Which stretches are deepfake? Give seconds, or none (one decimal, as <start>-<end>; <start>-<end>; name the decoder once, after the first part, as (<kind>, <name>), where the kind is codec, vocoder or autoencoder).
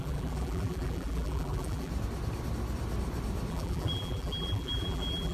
0.0-1.9 (vocoder, BigVGAN v2); 3.5-5.3